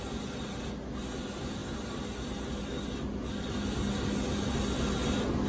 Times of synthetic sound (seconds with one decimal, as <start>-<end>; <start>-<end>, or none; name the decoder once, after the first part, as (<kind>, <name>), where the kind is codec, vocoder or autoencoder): none